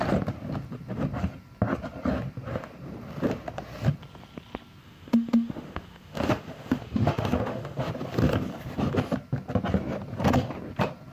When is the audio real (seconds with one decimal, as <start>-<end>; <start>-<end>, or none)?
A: 0.0-4.8; 7.9-11.1